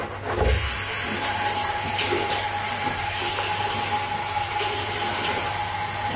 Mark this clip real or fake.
real